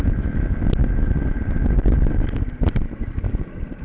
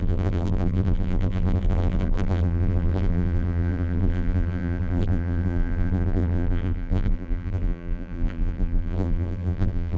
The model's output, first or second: second